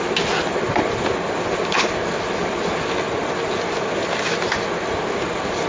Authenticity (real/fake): real